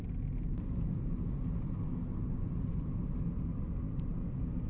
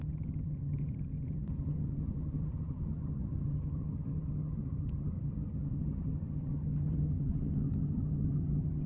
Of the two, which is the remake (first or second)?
second